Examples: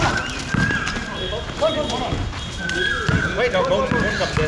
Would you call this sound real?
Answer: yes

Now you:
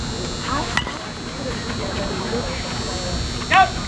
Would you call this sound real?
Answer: yes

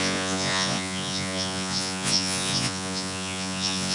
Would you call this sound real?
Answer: no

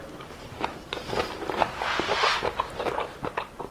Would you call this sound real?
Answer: no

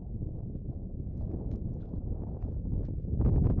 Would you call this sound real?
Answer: yes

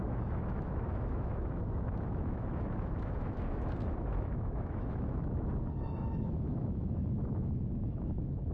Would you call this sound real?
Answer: no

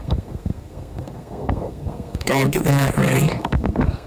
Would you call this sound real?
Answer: no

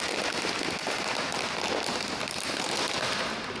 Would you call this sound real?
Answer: yes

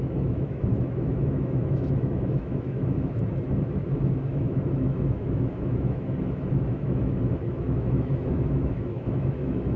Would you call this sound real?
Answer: no